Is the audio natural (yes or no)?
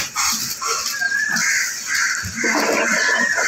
yes